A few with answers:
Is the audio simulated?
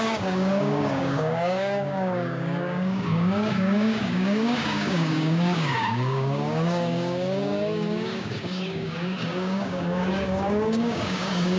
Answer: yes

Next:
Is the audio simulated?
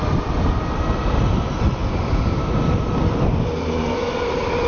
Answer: no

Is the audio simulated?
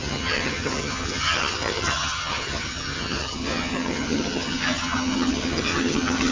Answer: yes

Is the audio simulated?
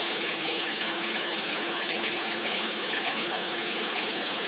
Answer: yes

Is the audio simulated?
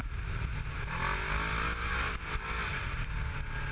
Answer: no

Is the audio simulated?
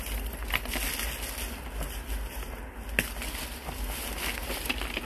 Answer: no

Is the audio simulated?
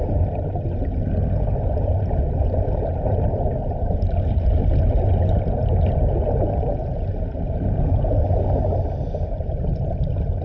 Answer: no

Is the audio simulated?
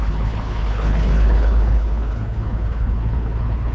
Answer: yes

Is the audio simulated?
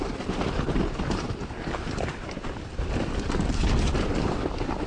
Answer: no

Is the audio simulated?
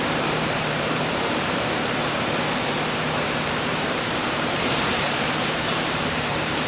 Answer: yes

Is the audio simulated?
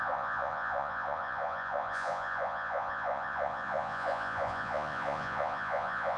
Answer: yes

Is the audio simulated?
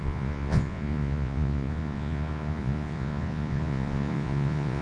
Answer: yes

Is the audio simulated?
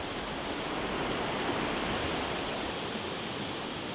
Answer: no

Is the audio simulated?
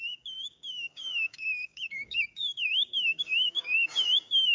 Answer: yes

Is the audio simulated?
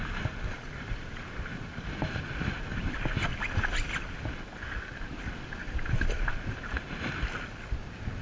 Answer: no